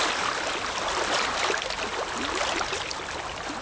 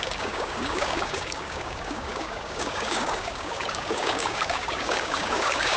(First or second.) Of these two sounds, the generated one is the second